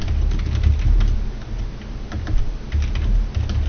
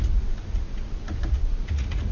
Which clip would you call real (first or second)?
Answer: first